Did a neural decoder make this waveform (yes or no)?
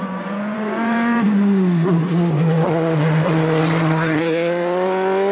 yes